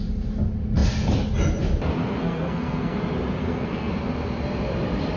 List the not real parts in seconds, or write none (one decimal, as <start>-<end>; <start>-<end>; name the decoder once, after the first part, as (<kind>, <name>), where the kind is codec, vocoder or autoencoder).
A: 2.0-3.0 (codec, SNAC); 3.4-3.9